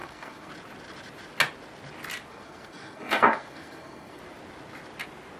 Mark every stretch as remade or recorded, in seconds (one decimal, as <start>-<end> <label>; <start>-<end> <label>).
0.0-0.5 remade; 0.5-2.3 recorded; 2.3-4.2 remade; 4.2-5.4 recorded